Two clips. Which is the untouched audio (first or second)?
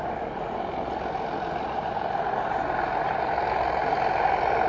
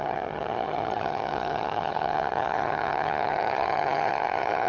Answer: first